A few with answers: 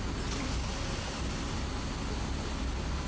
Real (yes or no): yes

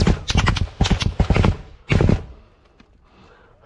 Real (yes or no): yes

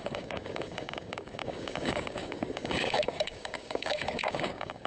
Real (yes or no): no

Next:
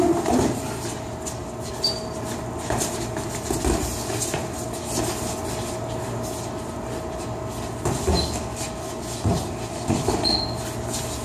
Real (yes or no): yes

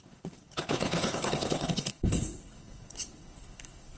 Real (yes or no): no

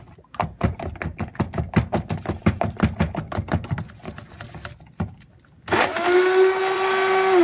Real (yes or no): yes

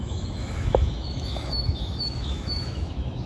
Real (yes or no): no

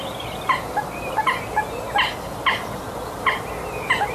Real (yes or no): yes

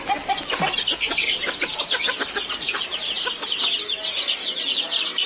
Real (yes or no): yes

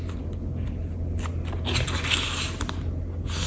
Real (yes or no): yes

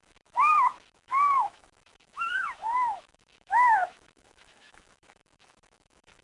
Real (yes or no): no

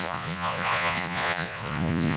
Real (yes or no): no